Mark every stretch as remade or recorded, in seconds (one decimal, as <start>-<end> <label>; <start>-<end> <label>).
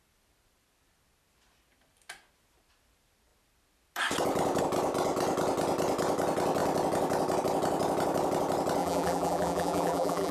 0.0-8.8 recorded; 8.8-10.3 remade